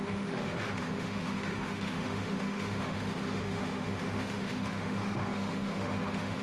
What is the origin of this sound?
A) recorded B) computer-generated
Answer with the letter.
B